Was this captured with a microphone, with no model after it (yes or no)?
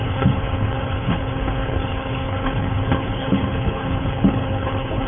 no